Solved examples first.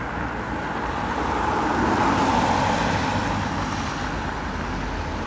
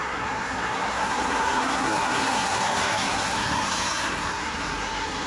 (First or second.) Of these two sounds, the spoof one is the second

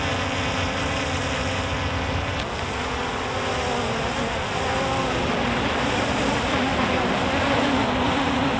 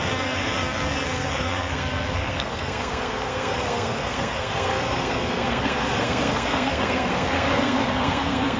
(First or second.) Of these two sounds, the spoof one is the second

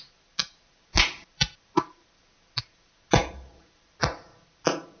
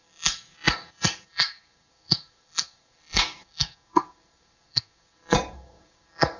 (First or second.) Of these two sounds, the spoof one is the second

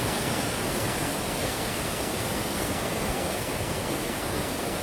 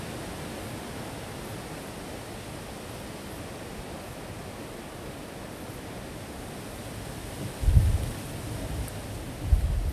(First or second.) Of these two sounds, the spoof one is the first